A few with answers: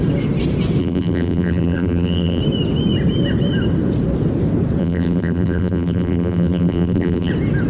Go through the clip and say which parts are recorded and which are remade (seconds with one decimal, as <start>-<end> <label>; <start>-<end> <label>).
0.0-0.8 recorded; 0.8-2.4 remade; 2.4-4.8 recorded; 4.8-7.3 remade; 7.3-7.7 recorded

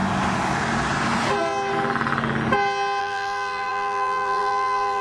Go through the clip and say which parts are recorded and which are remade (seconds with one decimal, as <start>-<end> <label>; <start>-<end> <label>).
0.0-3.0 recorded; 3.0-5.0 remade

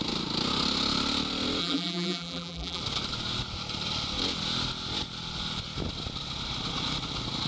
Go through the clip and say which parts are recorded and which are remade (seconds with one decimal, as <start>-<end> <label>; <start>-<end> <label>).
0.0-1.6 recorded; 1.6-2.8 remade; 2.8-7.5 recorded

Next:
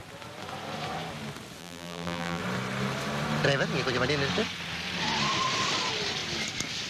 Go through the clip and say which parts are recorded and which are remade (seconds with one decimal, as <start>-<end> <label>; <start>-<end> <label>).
0.0-1.6 recorded; 1.6-2.4 remade; 2.4-6.9 recorded

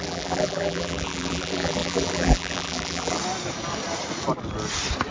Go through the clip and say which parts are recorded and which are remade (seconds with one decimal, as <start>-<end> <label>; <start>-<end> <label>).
0.0-3.2 remade; 3.2-5.1 recorded

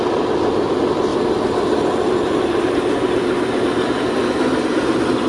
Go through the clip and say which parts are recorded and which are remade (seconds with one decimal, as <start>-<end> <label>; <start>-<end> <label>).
0.0-5.3 recorded